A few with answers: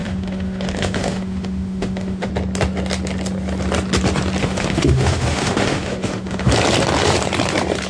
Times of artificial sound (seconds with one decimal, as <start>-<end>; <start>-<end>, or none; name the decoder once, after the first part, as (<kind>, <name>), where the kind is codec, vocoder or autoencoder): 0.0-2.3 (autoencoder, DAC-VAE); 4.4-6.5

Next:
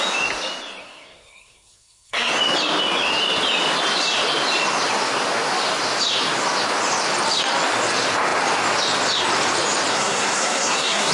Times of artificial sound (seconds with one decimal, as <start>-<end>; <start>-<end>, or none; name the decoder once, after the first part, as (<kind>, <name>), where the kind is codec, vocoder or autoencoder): 0.8-2.3 (codec, SNAC); 9.9-11.1

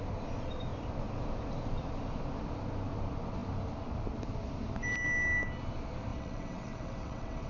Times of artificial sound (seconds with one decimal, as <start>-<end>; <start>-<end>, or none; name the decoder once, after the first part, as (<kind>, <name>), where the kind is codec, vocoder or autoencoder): 6.1-7.5 (vocoder, WaveNeXt)

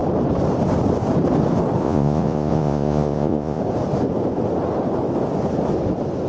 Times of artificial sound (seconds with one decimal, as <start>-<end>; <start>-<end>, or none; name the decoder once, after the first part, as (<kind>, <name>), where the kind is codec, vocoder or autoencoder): 1.8-3.6 (vocoder, Vocos)

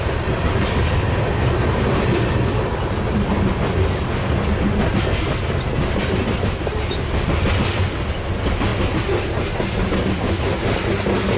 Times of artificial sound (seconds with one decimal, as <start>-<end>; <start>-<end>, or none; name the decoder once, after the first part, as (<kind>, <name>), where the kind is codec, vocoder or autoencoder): none